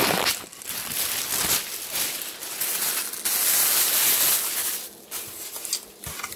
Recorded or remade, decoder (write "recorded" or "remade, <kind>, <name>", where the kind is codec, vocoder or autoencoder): recorded